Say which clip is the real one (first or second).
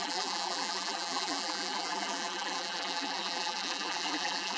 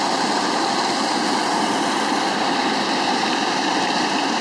second